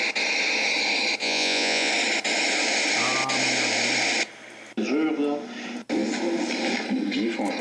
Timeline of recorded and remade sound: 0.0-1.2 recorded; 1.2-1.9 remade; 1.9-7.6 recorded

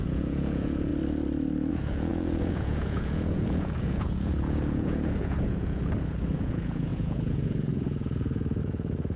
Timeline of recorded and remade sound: 0.0-0.9 remade; 0.9-1.7 recorded; 1.7-9.2 remade

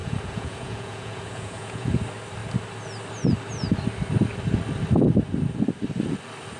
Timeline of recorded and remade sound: 0.0-2.0 remade; 2.0-6.6 recorded

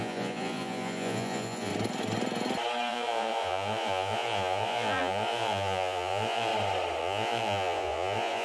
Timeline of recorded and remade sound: 0.0-1.7 remade; 1.7-2.9 recorded; 2.9-6.5 remade; 6.5-7.0 recorded; 7.0-8.4 remade

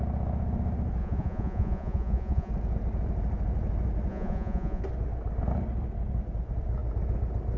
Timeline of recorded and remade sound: 0.0-1.0 recorded; 1.0-2.5 remade; 2.5-4.1 recorded; 4.1-4.8 remade; 4.8-7.6 recorded